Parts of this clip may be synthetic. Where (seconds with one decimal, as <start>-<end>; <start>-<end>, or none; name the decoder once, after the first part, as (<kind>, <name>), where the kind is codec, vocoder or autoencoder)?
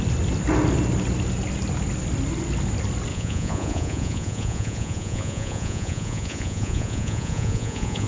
3.1-8.1 (vocoder, Vocos)